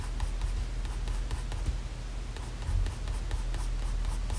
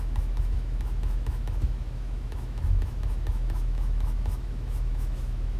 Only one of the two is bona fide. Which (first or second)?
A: first